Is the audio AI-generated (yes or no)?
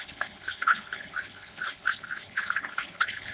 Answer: yes